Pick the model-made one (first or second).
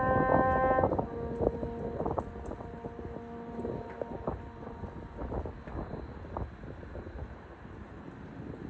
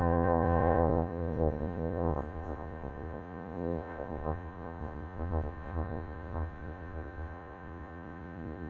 second